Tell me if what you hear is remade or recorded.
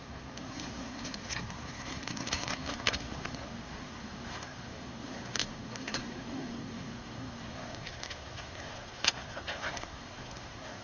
remade